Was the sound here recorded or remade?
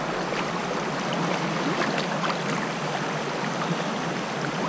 recorded